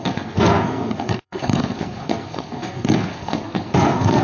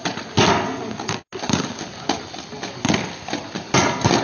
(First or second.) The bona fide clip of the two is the second